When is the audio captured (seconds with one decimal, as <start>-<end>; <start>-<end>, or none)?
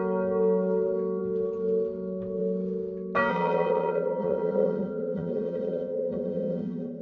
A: 0.0-3.3